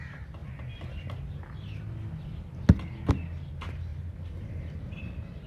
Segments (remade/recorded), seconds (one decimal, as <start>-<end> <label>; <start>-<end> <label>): 0.0-3.9 recorded; 3.9-4.7 remade; 4.7-5.5 recorded